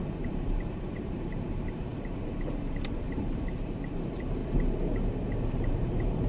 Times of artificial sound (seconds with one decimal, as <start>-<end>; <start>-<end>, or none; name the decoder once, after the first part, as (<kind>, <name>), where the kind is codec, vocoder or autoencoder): 0.0-4.4 (vocoder, BigVGAN v2); 5.5-6.3

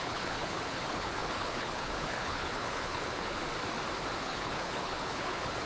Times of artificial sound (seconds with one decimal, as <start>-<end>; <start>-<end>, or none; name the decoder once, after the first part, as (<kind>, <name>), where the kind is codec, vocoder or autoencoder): 0.0-3.4 (codec, HILCodec); 4.2-5.7

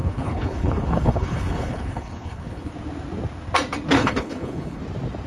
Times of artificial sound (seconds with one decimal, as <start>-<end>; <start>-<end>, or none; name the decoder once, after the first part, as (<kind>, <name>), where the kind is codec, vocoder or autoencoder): 0.0-2.7 (codec, HILCodec); 4.0-4.8

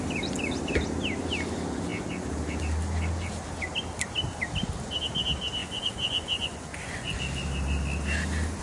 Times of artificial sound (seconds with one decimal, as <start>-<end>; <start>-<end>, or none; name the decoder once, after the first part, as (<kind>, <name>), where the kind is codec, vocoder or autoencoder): 5.6-7.2 (vocoder, Vocos)

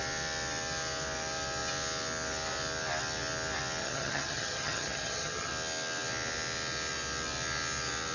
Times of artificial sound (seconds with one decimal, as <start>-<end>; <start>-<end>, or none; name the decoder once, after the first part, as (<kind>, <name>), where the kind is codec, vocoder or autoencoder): 3.8-5.5 (vocoder, HiFi-GAN)

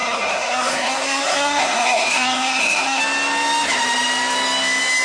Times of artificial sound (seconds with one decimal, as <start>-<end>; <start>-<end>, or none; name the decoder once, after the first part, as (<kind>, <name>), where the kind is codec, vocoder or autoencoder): 0.0-3.0 (codec, SNAC)